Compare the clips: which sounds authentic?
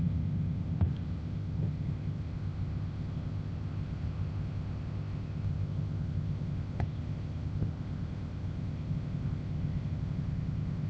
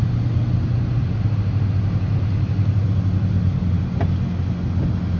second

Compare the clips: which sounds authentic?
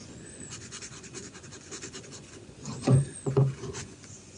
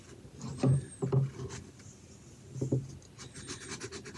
second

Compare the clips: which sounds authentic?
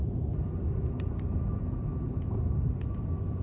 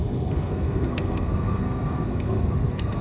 first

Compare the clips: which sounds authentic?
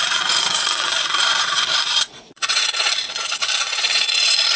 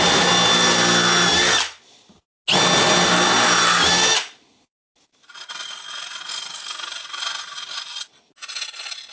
second